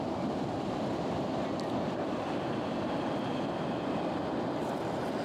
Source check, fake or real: real